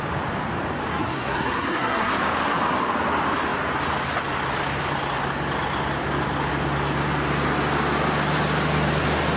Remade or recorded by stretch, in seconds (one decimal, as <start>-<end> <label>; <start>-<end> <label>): 0.0-0.9 recorded; 0.9-2.1 remade; 2.1-9.4 recorded